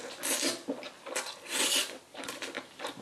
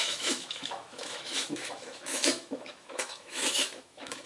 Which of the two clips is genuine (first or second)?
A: first